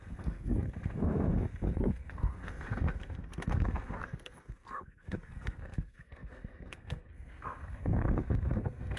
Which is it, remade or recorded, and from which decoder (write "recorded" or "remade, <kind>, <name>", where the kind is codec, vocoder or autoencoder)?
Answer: remade, codec, SNAC